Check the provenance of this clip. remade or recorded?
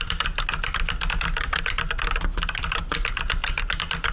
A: recorded